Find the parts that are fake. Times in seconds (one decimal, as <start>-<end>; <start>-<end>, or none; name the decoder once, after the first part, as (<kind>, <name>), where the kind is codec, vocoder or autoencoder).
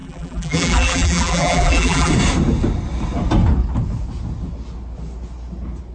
0.0-2.1 (vocoder, BigVGAN v2)